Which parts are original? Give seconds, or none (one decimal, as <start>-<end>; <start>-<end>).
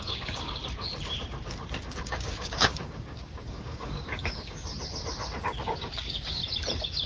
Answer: 0.6-1.9; 4.7-5.6; 6.4-7.1